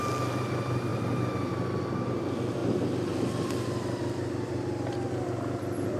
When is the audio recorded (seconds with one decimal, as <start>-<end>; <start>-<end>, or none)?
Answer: 0.0-6.0